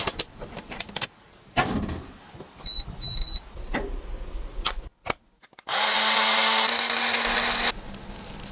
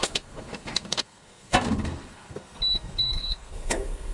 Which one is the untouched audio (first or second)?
first